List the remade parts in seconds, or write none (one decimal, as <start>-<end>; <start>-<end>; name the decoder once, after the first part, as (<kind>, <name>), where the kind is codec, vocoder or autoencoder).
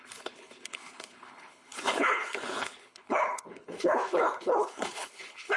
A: 0.0-5.6 (codec, HILCodec)